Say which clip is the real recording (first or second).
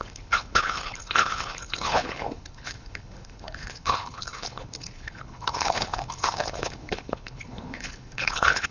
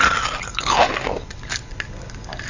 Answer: second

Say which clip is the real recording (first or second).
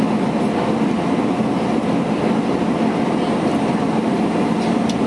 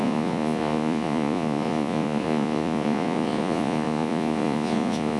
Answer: first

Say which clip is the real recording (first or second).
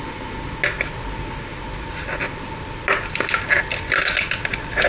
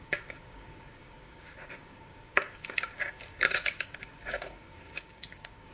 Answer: first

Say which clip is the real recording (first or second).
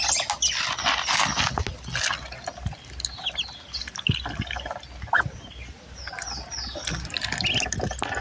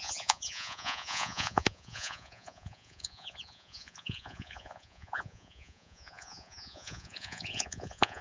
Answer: first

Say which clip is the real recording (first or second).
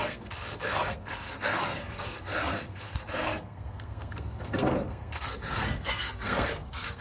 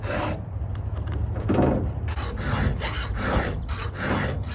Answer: second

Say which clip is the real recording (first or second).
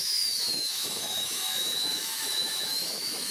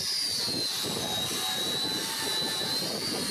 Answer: second